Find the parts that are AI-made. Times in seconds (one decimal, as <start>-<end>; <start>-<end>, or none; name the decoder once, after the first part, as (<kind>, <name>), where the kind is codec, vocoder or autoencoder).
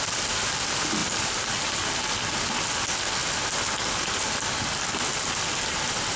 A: none